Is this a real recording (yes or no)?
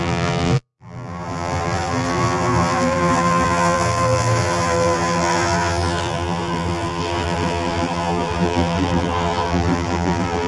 no